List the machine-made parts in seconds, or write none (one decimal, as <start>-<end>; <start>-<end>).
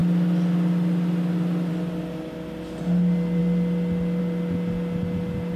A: none